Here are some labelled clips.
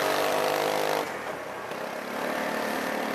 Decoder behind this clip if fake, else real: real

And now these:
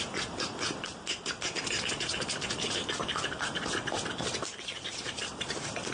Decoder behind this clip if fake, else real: fake, vocoder, BigVGAN v2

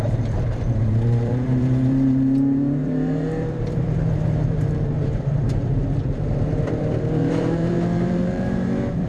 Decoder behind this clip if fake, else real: fake, vocoder, BigVGAN v2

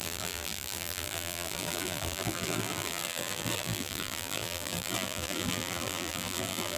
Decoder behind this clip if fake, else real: fake, vocoder, BigVGAN v2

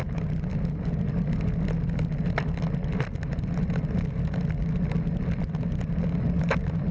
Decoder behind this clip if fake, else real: real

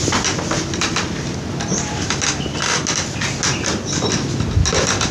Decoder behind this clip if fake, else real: real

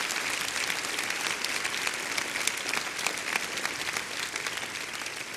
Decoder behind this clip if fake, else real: real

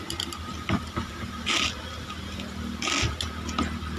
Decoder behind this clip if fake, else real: real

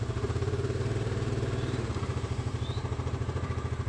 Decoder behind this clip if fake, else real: fake, vocoder, BigVGAN v2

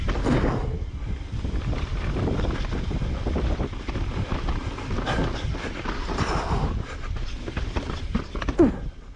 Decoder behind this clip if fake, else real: real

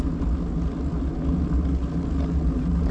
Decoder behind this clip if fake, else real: real